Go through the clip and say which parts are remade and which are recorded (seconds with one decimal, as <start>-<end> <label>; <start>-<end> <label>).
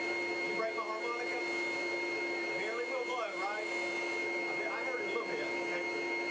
0.0-6.3 recorded